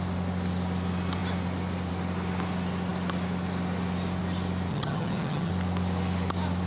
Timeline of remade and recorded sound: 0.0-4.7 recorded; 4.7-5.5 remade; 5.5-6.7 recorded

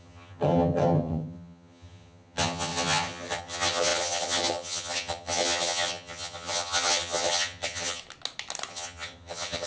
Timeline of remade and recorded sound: 0.0-8.0 remade; 8.0-8.7 recorded; 8.7-9.7 remade

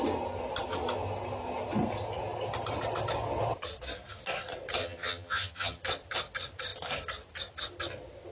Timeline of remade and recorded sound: 0.0-4.8 recorded; 4.8-5.8 remade; 5.8-8.3 recorded

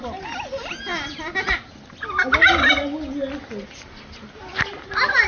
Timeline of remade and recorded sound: 0.0-5.3 recorded

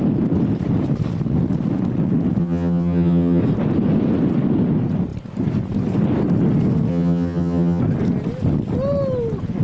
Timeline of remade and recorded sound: 0.0-2.4 recorded; 2.4-3.4 remade; 3.4-6.9 recorded; 6.9-7.8 remade; 7.8-9.6 recorded

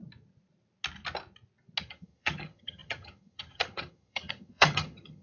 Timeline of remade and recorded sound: 0.0-1.8 recorded; 1.8-5.2 remade

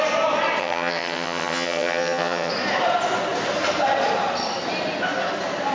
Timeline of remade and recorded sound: 0.0-0.6 recorded; 0.6-2.5 remade; 2.5-5.7 recorded

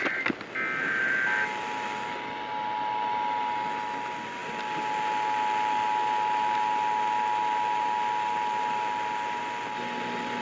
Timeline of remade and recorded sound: 0.0-10.4 recorded